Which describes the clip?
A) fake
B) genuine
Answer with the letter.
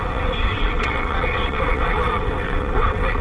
A